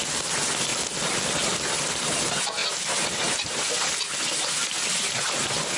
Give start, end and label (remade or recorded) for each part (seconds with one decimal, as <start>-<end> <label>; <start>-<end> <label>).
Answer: 0.0-5.8 recorded